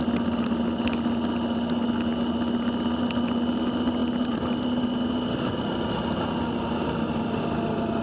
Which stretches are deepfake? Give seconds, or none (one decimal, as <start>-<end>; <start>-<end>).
none